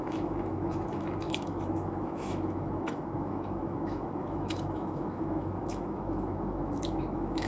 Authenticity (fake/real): fake